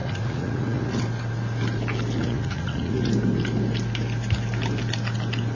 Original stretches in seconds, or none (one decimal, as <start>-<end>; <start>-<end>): 1.0-2.2; 3.1-5.5